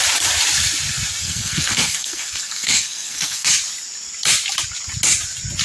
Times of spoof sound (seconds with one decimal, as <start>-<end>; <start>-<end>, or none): 1.2-3.5